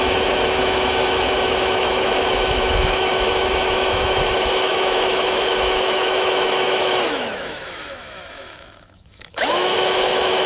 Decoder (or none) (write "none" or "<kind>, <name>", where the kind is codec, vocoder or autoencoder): autoencoder, DAC-VAE